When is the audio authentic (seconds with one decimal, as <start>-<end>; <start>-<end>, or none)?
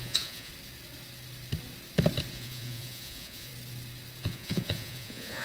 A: 0.5-2.3; 3.5-4.2